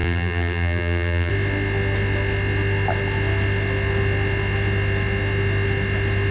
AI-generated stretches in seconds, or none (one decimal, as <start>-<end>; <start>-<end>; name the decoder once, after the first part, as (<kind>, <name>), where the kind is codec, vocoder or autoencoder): 0.0-1.3 (vocoder, BigVGAN v2)